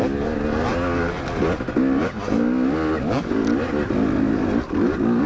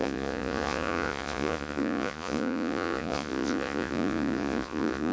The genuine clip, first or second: first